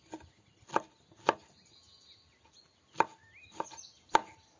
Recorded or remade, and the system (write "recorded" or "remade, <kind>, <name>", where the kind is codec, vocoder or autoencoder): recorded